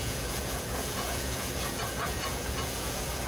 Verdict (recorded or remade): remade